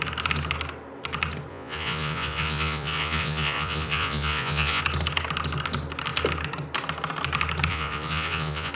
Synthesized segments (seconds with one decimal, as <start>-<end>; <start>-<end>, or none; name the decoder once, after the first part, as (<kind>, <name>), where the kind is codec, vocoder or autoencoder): 1.5-4.8 (vocoder, Vocos); 7.7-8.7